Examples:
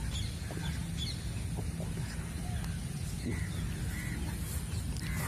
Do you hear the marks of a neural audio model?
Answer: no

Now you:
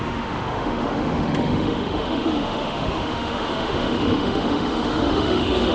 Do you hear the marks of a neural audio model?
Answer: yes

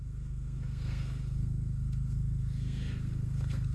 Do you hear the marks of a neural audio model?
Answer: yes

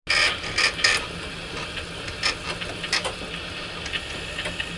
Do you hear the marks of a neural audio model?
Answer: no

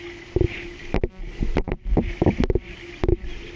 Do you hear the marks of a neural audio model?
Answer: no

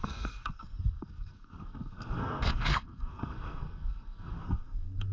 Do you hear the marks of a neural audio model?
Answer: yes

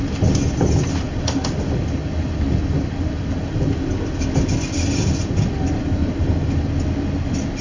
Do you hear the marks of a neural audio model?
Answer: no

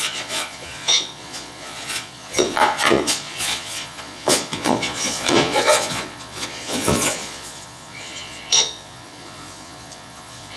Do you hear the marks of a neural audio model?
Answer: yes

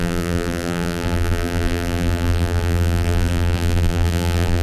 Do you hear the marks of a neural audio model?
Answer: yes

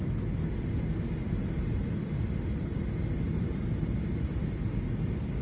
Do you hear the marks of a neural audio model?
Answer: no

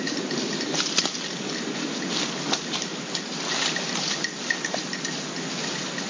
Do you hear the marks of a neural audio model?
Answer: no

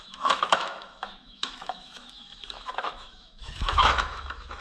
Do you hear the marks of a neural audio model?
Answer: yes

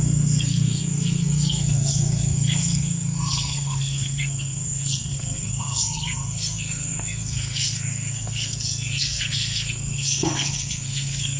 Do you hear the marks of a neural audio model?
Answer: yes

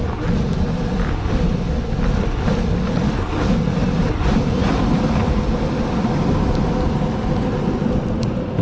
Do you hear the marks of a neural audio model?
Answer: no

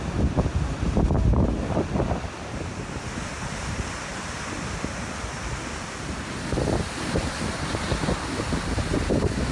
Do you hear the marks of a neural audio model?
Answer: no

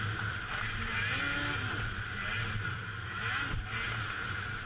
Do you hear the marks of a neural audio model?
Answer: no